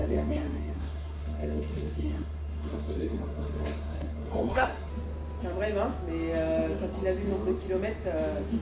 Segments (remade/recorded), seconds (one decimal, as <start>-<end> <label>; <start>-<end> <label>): 0.0-4.9 remade; 4.9-8.6 recorded